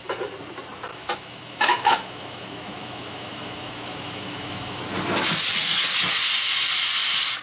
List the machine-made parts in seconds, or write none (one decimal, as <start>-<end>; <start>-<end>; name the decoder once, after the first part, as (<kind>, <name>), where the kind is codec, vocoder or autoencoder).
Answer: 0.9-4.8 (autoencoder, DAC-VAE)